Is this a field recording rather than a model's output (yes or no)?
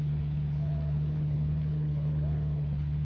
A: no